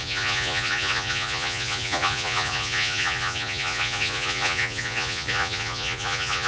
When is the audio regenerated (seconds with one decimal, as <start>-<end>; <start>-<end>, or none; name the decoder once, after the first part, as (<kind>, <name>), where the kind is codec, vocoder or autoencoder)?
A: 0.0-6.5 (vocoder, Vocos)